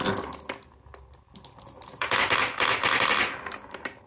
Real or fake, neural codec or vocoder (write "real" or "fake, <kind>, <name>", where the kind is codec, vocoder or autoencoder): real